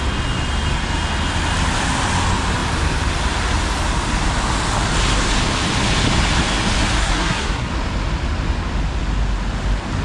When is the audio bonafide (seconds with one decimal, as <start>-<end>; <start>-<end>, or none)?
0.0-7.0; 7.7-10.0